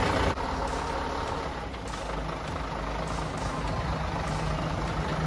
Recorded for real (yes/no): yes